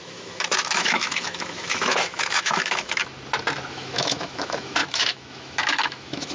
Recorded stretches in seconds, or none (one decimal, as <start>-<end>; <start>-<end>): 3.0-3.7

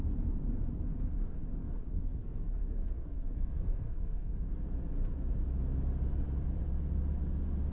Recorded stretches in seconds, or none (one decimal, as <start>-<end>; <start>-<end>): 0.0-1.6; 4.5-7.7

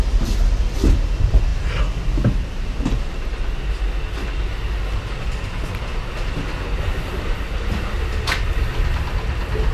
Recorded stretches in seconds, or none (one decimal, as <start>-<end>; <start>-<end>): 0.0-9.7

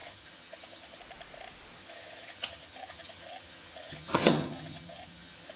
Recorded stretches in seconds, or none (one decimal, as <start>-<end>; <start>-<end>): 1.0-1.8

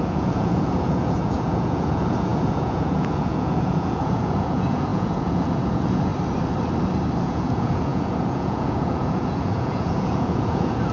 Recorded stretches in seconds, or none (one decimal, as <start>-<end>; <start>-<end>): 6.1-7.2

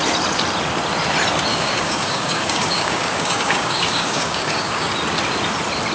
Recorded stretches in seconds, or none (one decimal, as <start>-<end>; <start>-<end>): 0.0-1.5; 4.9-5.9

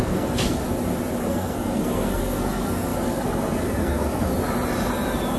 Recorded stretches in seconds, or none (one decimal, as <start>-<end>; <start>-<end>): 0.6-1.2; 4.3-5.4

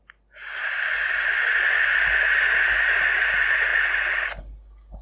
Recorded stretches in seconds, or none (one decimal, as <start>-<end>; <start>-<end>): 0.0-5.0